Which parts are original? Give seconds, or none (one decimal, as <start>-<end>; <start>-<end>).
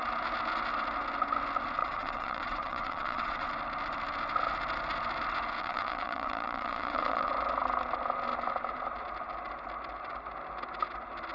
0.0-1.8; 3.5-5.6; 7.3-11.3